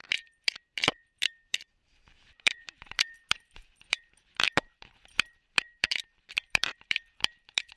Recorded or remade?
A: remade